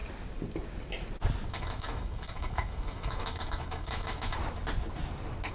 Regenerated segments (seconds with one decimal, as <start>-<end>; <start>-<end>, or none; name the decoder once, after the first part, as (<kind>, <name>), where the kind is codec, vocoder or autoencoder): 1.5-4.4 (autoencoder, DAC-VAE)